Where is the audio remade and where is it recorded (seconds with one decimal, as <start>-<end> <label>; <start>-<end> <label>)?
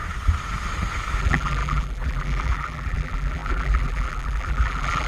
0.0-1.2 recorded; 1.2-5.1 remade